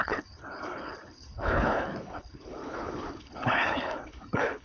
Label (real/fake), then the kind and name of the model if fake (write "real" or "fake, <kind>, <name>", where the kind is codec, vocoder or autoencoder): fake, codec, HILCodec